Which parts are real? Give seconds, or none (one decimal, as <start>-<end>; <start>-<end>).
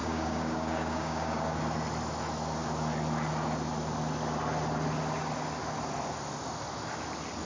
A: 1.6-7.4